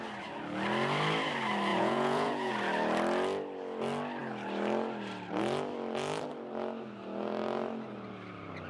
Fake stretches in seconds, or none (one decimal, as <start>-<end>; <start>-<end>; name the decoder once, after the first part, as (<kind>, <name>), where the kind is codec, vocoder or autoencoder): 1.7-2.5 (vocoder, Vocos)